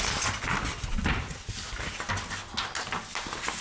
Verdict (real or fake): real